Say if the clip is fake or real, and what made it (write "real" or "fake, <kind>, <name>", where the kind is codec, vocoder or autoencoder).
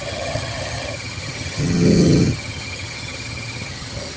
fake, vocoder, HiFi-GAN